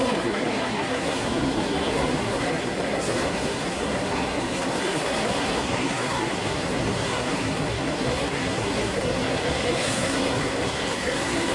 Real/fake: fake